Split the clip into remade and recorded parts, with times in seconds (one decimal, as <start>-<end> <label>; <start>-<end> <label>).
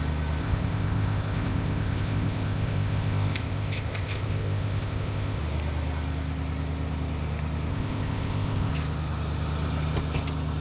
0.0-0.4 recorded; 0.4-5.4 remade; 5.4-7.7 recorded; 7.7-8.7 remade; 8.7-10.6 recorded